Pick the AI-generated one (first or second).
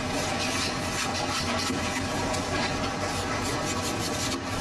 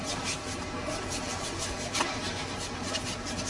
second